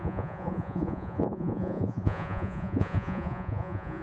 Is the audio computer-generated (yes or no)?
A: yes